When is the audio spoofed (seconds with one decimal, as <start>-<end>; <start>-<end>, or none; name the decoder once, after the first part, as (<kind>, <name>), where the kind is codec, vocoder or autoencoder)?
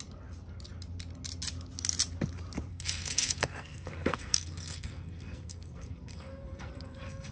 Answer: 2.7-7.3 (codec, SNAC)